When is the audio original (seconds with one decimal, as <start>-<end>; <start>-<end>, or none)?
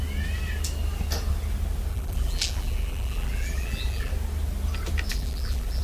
0.0-1.9; 4.1-5.1